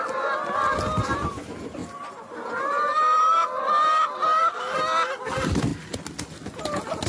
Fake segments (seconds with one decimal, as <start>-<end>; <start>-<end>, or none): none